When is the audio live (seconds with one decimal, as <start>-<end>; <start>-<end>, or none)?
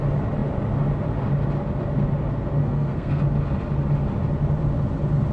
0.0-2.6; 3.2-5.3